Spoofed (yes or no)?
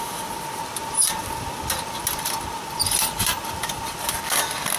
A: no